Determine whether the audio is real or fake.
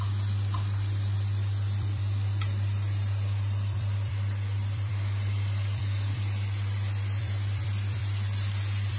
fake